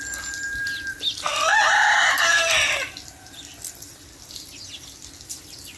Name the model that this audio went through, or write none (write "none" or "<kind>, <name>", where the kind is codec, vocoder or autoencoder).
none